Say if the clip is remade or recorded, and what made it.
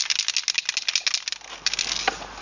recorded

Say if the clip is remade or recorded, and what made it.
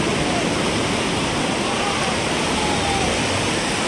recorded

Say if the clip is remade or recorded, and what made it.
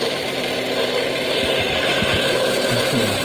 remade, vocoder, BigVGAN v2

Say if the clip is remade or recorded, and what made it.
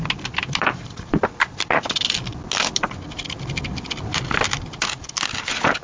recorded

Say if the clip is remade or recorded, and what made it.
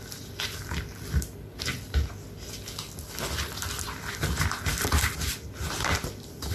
recorded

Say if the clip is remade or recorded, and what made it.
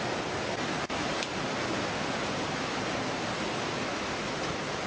recorded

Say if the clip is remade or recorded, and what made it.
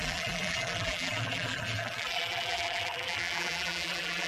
remade, vocoder, BigVGAN v2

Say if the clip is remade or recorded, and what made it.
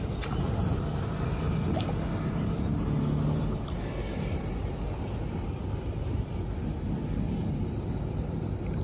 recorded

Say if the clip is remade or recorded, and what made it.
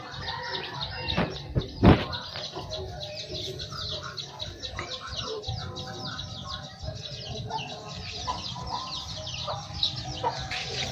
recorded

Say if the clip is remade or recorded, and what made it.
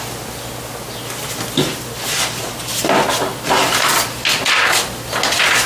recorded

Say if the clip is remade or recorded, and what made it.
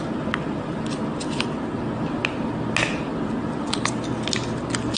recorded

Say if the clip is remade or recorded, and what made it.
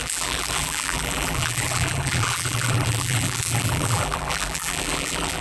remade, vocoder, BigVGAN v2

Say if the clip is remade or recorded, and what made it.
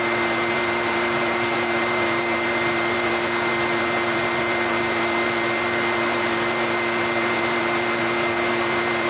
remade, vocoder, BigVGAN v2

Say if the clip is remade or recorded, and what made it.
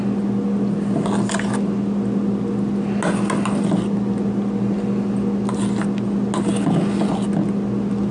recorded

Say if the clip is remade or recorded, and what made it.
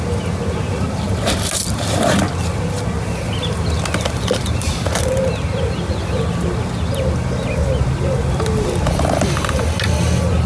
recorded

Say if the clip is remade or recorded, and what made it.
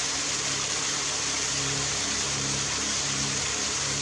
remade, vocoder, BigVGAN v2